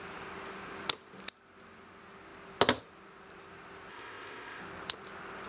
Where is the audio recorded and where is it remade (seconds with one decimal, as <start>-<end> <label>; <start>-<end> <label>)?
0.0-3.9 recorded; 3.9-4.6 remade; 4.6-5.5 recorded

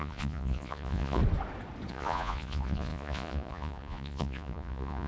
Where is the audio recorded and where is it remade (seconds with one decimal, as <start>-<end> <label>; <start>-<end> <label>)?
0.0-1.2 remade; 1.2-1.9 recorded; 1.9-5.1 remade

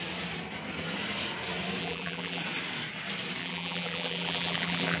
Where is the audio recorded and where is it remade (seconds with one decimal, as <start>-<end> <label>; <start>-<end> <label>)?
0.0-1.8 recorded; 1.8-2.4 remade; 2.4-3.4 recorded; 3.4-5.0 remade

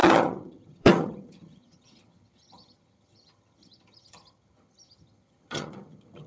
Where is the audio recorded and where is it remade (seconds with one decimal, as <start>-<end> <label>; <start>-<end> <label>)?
0.0-6.3 remade

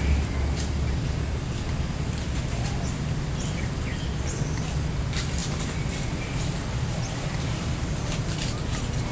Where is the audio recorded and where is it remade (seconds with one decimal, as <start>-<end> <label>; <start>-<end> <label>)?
0.0-9.1 recorded